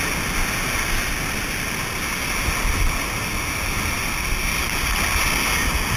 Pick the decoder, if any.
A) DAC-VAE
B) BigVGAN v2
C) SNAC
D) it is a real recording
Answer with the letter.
D